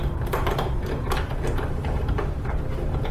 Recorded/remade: remade